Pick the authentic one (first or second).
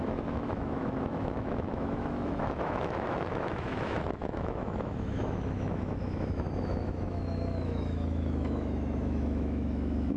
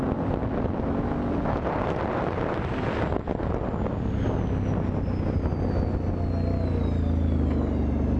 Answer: second